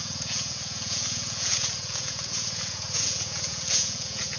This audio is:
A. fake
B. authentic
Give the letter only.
A